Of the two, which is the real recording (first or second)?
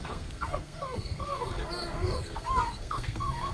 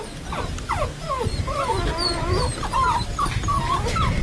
second